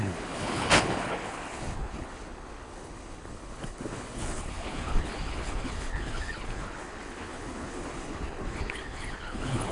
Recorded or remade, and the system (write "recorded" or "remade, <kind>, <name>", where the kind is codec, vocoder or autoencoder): remade, codec, HILCodec